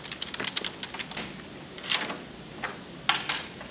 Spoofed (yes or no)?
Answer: no